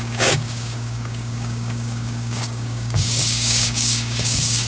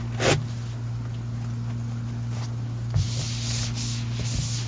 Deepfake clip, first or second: first